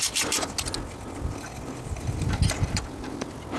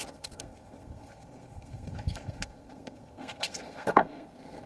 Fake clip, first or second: second